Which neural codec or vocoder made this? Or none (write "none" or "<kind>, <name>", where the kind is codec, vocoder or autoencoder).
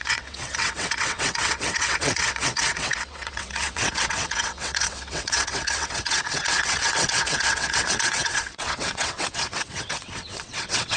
vocoder, WaveNeXt